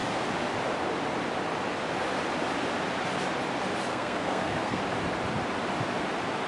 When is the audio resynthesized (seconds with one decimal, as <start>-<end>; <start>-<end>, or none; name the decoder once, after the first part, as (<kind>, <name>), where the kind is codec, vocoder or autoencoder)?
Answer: 3.9-4.8 (codec, SNAC)